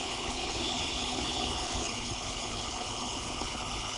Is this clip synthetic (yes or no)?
yes